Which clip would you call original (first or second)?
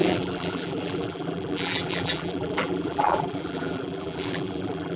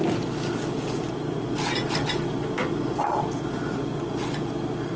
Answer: second